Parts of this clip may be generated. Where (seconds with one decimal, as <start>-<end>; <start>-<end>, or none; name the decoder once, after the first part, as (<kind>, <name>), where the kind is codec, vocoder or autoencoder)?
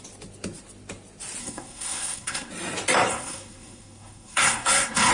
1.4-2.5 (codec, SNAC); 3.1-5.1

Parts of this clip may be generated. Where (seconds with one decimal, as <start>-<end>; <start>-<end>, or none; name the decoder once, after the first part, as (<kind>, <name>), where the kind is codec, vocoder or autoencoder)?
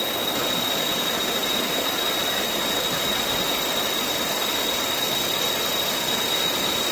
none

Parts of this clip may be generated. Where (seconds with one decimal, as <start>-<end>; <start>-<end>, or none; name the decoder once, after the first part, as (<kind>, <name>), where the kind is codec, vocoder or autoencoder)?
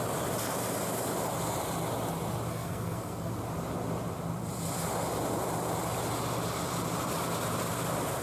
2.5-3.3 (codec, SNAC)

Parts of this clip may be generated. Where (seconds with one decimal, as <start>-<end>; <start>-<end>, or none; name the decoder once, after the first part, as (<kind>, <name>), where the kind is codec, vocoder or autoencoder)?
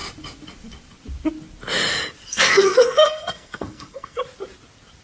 2.3-4.2 (codec, SNAC)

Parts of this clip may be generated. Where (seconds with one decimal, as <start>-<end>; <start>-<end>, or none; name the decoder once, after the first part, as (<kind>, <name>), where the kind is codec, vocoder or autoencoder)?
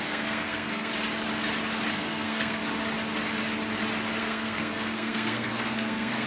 0.0-0.9 (codec, SNAC); 1.9-2.6; 4.2-6.3